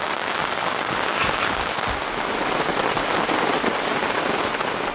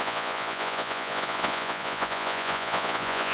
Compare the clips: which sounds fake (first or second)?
second